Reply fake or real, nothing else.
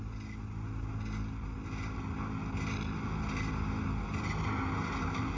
real